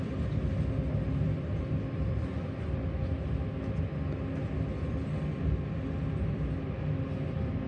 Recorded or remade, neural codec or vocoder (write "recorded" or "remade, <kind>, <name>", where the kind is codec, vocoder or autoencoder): recorded